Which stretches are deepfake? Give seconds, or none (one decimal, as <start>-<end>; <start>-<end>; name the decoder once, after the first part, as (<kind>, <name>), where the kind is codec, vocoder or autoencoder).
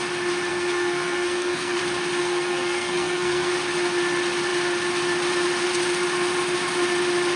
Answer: 0.5-1.8 (codec, SNAC); 2.2-3.5